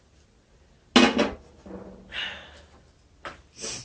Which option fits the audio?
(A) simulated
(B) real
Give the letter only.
B